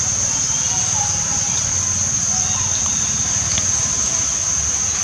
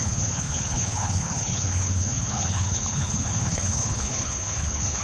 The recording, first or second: first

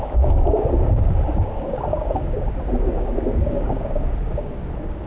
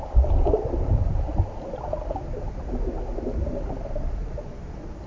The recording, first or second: second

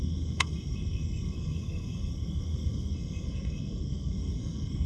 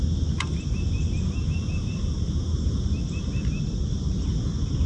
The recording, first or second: second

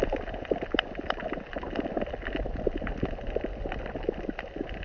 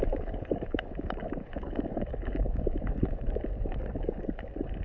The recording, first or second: first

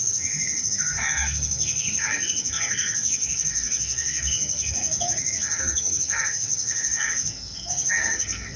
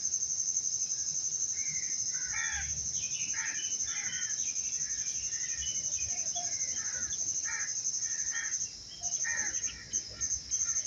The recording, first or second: second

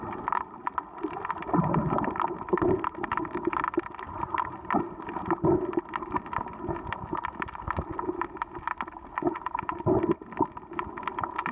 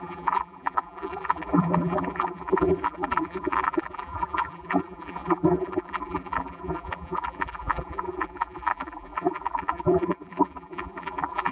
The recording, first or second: first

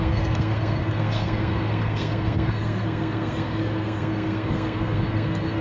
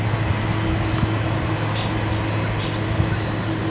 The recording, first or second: second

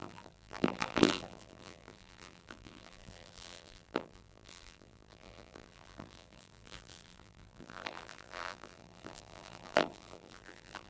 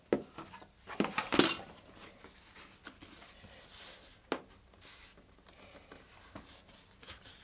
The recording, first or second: second